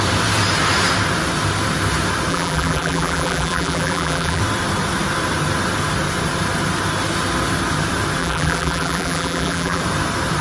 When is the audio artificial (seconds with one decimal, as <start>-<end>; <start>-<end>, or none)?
2.3-4.4; 8.2-9.8